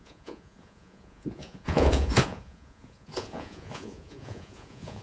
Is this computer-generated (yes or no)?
yes